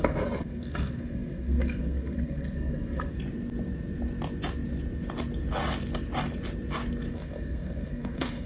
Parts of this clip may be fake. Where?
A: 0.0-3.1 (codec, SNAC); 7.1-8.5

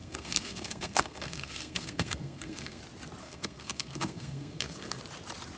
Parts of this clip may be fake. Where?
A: 0.0-2.8 (codec, SNAC); 3.2-5.0

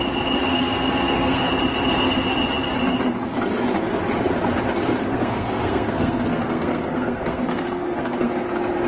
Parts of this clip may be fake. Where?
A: 0.4-1.5 (codec, SNAC); 5.0-8.3

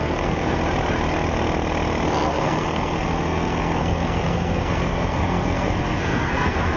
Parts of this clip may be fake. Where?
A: 0.0-0.6 (codec, SNAC); 2.3-6.8